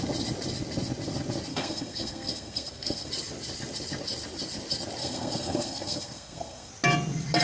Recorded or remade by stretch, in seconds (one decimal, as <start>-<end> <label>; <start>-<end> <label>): 0.0-1.5 recorded; 1.5-3.1 remade; 3.1-5.0 recorded; 5.0-6.7 remade; 6.7-7.4 recorded